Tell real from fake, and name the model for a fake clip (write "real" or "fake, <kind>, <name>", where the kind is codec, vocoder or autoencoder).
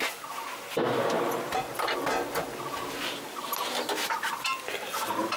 real